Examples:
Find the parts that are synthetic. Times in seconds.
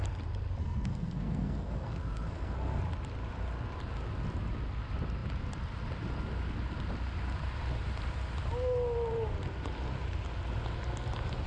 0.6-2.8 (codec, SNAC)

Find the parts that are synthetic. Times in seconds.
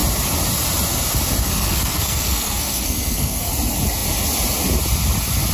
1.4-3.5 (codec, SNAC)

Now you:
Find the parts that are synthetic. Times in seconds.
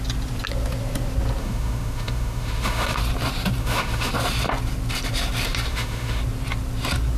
1.4-3.0 (autoencoder, DAC-VAE); 3.6-4.1; 5.7-6.2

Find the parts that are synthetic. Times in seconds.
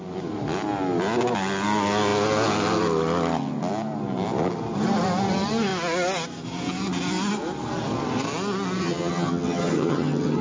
8.8-10.4 (vocoder, HiFi-GAN)